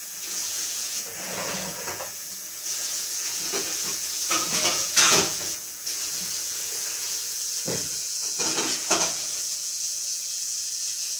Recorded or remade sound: remade